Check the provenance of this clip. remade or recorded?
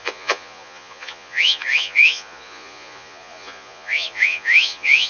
remade